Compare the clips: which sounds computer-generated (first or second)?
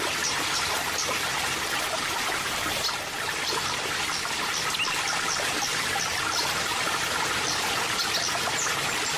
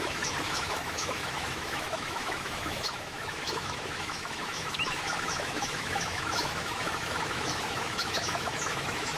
second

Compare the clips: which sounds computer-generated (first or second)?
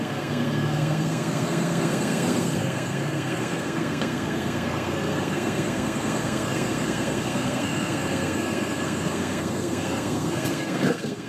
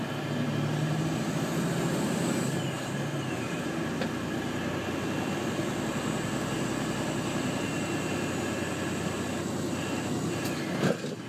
first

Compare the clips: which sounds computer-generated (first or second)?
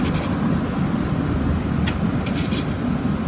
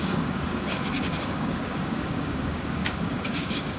second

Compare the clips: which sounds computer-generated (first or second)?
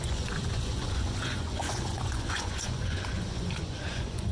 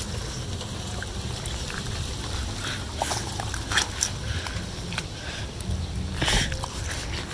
first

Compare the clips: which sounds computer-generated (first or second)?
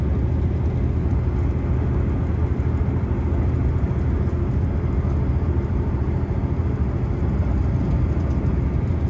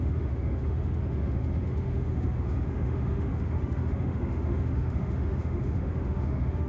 second